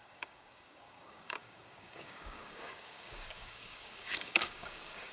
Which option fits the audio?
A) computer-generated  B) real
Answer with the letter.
A